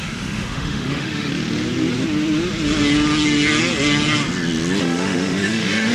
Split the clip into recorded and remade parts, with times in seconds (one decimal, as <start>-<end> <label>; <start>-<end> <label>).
0.0-1.3 remade; 1.3-4.8 recorded; 4.8-5.9 remade